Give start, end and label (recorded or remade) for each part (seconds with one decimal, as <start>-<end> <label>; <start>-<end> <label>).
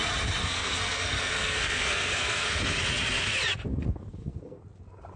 0.0-0.4 recorded; 0.4-2.6 remade; 2.6-3.7 recorded; 3.7-4.6 remade; 4.6-5.2 recorded